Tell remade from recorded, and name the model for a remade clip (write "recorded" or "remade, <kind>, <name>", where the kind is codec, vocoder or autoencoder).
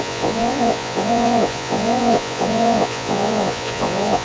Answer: remade, vocoder, Vocos